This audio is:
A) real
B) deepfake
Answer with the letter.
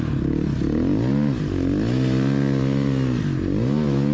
A